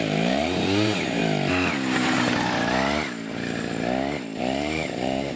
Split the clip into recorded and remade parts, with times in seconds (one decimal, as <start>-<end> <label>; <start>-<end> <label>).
0.0-1.2 remade; 1.2-4.4 recorded; 4.4-5.4 remade